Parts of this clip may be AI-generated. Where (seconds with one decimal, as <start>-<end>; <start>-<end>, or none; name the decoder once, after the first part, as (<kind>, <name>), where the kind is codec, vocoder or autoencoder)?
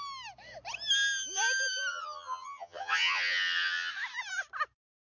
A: 1.9-3.9 (vocoder, HiFi-GAN)